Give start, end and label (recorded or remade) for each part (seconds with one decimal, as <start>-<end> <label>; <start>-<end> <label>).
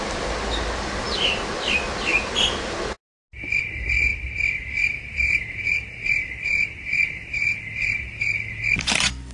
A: 0.0-9.3 recorded